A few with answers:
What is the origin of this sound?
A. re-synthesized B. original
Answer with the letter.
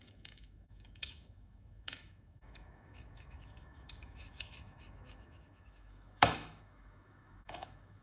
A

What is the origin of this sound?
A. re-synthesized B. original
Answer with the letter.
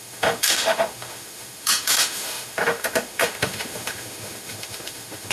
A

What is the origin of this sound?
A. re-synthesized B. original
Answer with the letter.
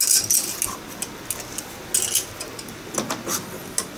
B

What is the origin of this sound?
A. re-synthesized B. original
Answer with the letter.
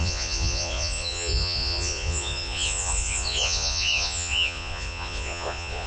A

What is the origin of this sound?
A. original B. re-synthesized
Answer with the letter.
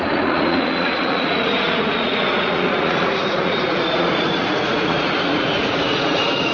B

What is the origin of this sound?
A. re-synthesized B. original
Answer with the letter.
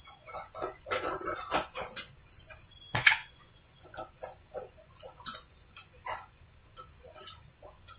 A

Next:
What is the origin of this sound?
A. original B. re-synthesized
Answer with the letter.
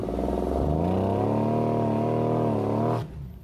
A